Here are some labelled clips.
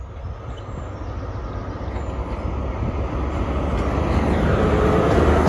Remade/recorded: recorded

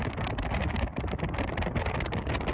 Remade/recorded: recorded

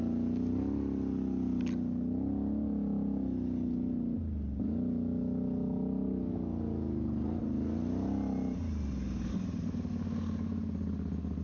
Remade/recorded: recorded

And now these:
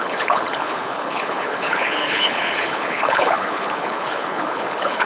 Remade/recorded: remade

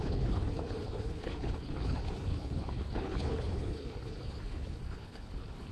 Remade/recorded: remade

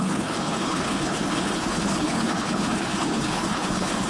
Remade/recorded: remade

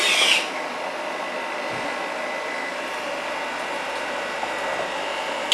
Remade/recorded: recorded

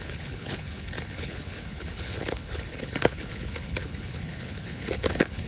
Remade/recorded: remade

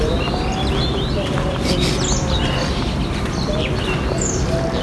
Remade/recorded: recorded